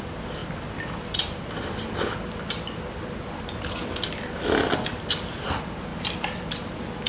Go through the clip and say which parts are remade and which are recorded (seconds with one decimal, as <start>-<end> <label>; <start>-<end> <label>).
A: 0.0-7.1 recorded